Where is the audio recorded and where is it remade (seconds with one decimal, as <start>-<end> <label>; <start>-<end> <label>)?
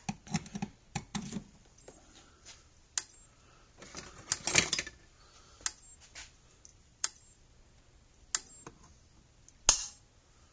0.0-1.1 recorded; 1.1-2.7 remade; 2.7-6.7 recorded; 6.7-7.4 remade; 7.4-10.5 recorded